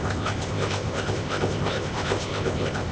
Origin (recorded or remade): remade